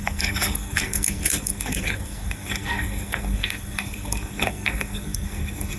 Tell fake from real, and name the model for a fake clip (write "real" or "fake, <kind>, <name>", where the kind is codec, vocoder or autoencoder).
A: fake, codec, SNAC